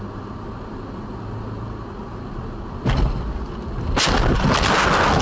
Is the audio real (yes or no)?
yes